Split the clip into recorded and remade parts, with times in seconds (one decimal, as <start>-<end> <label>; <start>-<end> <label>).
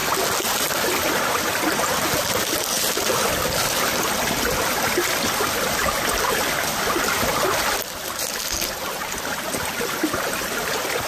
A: 0.0-11.1 recorded